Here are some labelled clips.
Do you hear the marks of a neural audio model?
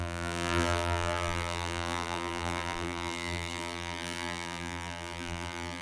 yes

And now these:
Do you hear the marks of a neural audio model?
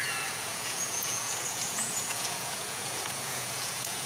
yes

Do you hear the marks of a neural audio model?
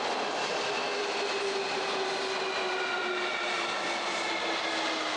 no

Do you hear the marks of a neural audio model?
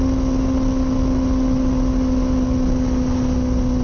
no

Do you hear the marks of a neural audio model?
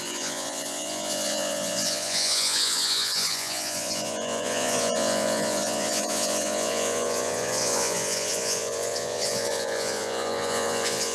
yes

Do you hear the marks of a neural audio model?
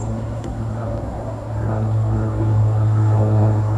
yes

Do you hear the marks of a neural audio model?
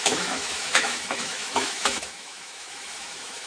yes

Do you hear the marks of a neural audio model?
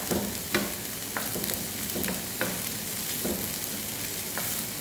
no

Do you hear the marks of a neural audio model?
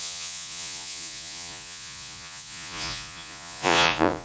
yes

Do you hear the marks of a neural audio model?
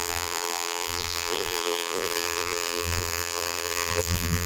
yes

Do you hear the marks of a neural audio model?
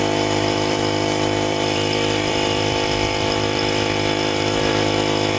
yes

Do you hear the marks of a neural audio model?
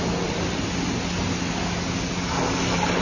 no